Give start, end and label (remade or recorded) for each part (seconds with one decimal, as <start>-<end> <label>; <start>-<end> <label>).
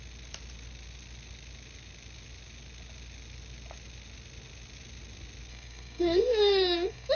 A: 0.0-5.5 recorded; 5.5-7.1 remade